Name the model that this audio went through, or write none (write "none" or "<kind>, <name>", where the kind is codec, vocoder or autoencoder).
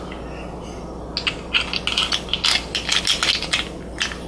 none